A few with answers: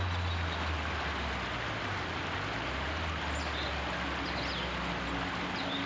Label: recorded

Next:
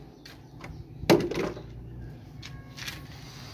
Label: recorded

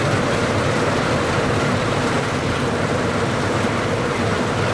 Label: recorded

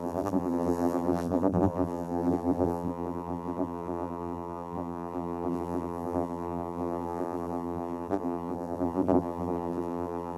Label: remade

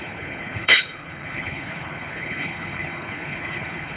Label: remade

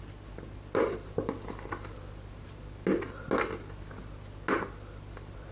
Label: recorded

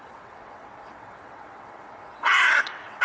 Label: remade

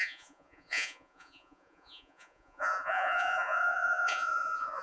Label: remade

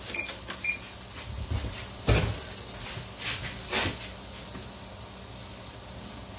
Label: recorded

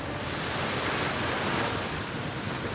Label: recorded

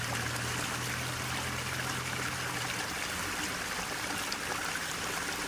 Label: recorded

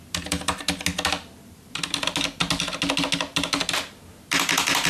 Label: recorded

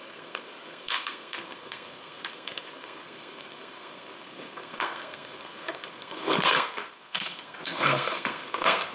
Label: remade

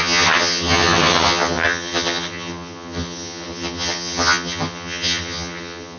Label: remade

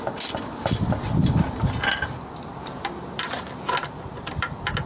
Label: remade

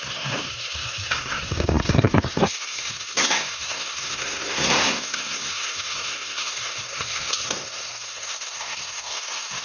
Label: remade